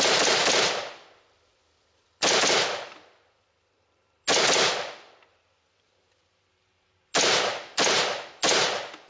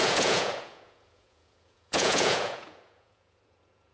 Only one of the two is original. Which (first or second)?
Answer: first